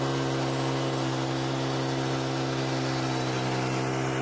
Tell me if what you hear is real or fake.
real